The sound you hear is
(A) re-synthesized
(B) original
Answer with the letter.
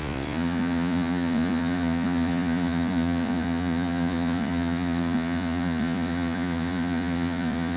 A